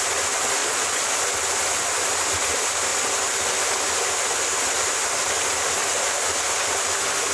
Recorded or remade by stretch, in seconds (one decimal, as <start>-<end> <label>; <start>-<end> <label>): 0.0-0.6 recorded; 0.6-1.1 remade; 1.1-7.3 recorded